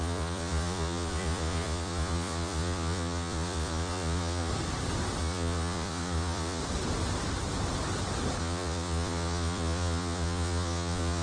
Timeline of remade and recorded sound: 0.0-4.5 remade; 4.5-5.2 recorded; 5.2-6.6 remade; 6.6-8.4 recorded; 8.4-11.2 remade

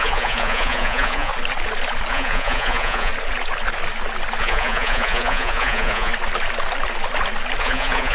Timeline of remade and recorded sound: 0.0-1.3 remade; 1.3-2.1 recorded; 2.1-3.1 remade; 3.1-4.4 recorded; 4.4-6.1 remade; 6.1-7.6 recorded; 7.6-8.1 remade

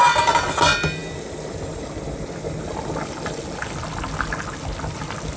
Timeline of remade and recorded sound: 0.0-5.4 recorded

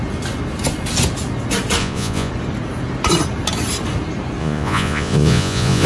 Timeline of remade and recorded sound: 0.0-1.8 recorded; 1.8-2.3 remade; 2.3-4.4 recorded; 4.4-5.9 remade

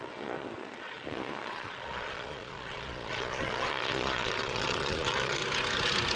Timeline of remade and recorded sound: 0.0-5.4 remade; 5.4-6.2 recorded

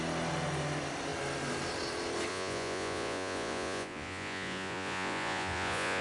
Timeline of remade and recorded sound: 0.0-2.3 recorded; 2.3-6.0 remade

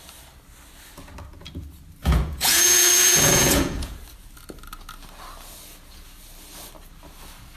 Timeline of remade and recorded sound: 0.0-2.0 recorded; 2.0-4.0 remade; 4.0-7.6 recorded